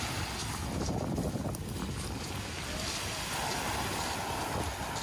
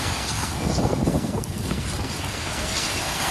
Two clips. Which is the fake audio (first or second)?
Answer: second